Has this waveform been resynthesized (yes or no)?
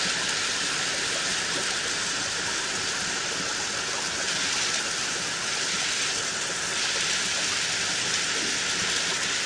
no